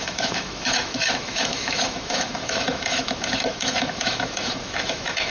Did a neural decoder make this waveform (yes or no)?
yes